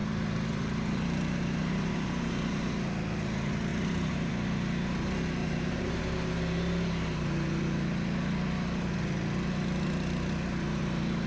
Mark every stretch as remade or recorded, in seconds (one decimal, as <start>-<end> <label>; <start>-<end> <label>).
0.0-2.7 remade; 2.7-3.7 recorded; 3.7-4.3 remade; 4.3-5.4 recorded; 5.4-6.0 remade; 6.0-11.3 recorded

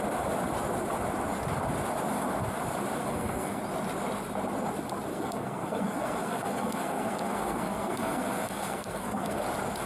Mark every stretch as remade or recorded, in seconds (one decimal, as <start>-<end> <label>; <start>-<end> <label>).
0.0-3.0 recorded; 3.0-3.6 remade; 3.6-5.1 recorded; 5.1-9.4 remade; 9.4-9.9 recorded

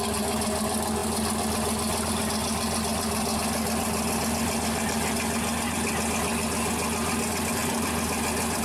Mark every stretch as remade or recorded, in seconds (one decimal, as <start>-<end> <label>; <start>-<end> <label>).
0.0-8.6 recorded